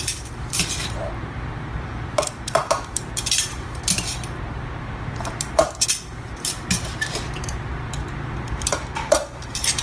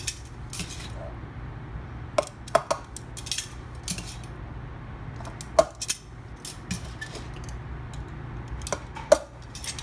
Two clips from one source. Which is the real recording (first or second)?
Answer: second